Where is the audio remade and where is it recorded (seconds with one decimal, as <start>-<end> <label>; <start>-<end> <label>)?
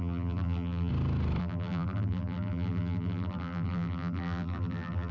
0.0-0.9 remade; 0.9-1.4 recorded; 1.4-5.1 remade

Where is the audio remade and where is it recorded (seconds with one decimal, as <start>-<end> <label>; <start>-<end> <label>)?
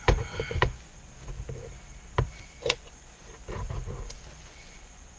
0.0-1.1 remade; 1.1-2.6 recorded; 2.6-3.3 remade; 3.3-4.5 recorded; 4.5-5.2 remade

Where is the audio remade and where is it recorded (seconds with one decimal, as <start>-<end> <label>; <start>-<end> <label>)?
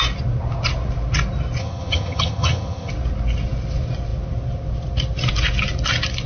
0.0-1.6 recorded; 1.6-2.9 remade; 2.9-6.3 recorded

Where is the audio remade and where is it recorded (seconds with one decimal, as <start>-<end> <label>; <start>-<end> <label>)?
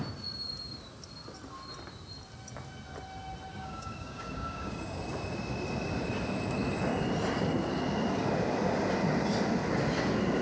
0.0-3.5 recorded; 3.5-5.0 remade; 5.0-10.4 recorded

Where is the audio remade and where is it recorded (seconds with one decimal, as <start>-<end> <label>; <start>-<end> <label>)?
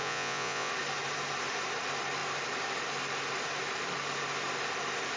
0.0-0.7 remade; 0.7-5.2 recorded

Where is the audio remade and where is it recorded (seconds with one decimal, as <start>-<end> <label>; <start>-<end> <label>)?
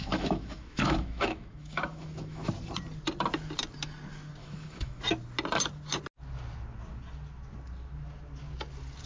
0.0-2.5 remade; 2.5-4.4 recorded; 4.4-5.0 remade; 5.0-9.1 recorded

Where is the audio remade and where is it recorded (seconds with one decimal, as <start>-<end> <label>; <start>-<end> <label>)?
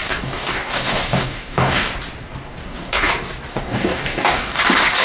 0.0-1.9 remade; 1.9-2.6 recorded; 2.6-3.1 remade; 3.1-3.5 recorded; 3.5-4.6 remade; 4.6-5.0 recorded